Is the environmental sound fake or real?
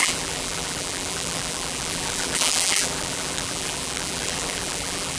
fake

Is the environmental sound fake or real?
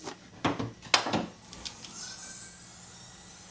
real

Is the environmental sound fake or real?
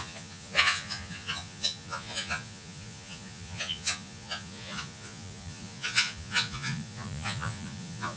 fake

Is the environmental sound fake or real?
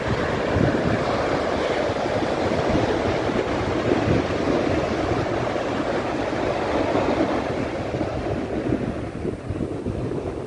real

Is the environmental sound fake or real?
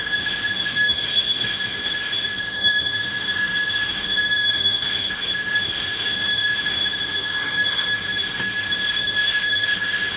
fake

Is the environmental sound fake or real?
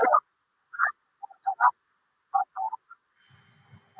real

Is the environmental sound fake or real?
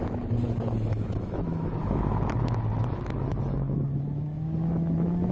fake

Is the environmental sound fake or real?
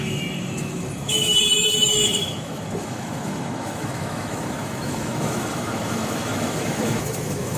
fake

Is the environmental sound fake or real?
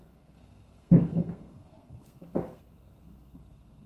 fake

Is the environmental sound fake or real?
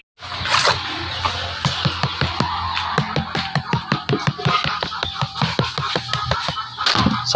real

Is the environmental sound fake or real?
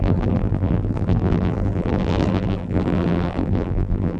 fake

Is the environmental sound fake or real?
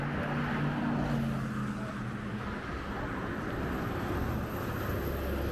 real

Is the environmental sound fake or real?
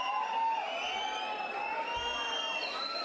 real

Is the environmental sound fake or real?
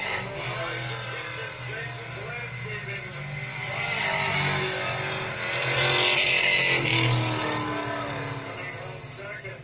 real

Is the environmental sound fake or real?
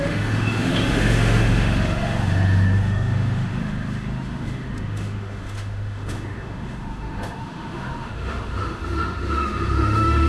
fake